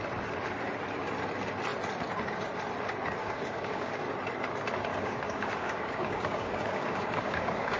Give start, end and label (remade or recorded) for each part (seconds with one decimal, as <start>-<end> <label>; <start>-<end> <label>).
0.0-3.2 recorded; 3.2-4.0 remade; 4.0-4.9 recorded; 4.9-7.8 remade